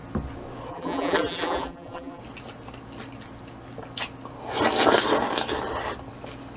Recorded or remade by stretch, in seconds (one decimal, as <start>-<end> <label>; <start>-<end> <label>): 0.0-0.7 recorded; 0.7-2.2 remade; 2.2-6.6 recorded